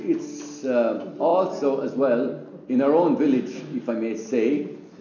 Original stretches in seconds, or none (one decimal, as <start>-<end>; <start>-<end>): 0.0-5.0